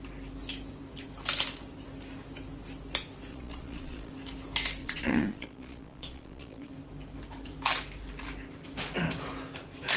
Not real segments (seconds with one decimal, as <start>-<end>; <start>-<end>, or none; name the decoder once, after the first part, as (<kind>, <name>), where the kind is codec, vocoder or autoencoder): 3.3-4.1 (vocoder, Vocos); 4.8-6.7